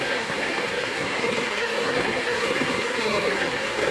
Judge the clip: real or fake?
fake